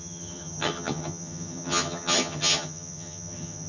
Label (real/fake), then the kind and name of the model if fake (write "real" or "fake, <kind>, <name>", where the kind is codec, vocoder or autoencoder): fake, vocoder, HiFi-GAN